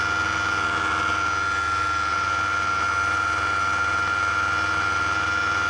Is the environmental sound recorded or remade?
recorded